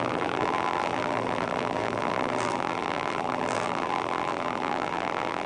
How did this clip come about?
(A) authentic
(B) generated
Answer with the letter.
B